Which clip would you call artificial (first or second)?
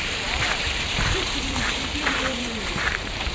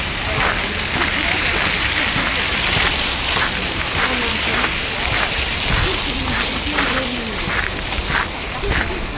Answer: first